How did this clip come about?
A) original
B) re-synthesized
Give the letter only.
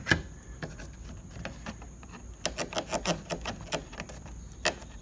A